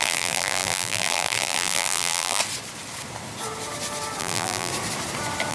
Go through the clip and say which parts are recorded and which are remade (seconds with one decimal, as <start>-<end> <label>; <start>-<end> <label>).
0.0-2.4 remade; 2.4-4.2 recorded; 4.2-4.7 remade; 4.7-5.5 recorded